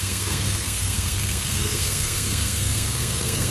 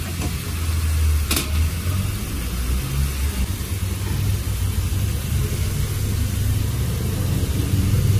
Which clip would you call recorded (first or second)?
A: second